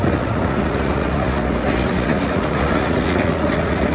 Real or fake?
fake